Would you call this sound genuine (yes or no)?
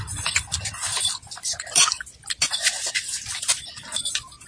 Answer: yes